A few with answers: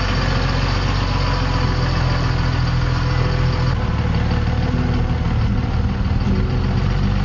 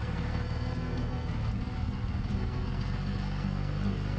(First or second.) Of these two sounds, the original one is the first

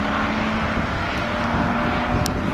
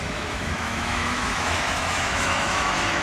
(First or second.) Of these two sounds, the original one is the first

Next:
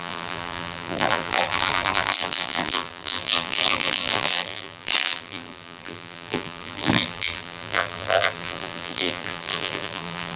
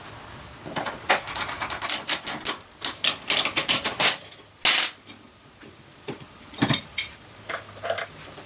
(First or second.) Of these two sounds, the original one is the second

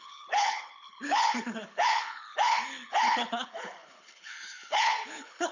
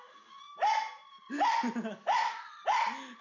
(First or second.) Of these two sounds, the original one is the second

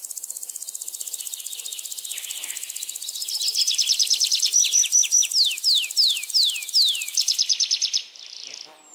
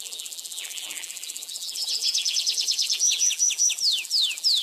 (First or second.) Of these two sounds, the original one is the first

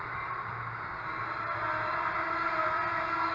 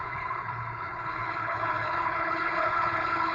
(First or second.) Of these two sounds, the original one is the first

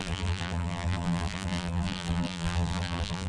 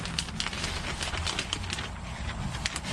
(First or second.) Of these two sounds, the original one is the second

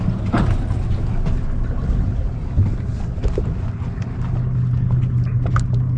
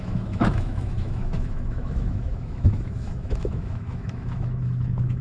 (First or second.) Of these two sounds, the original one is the first